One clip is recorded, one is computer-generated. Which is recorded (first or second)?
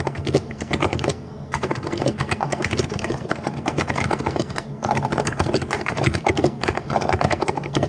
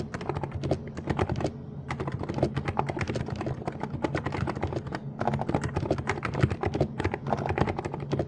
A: second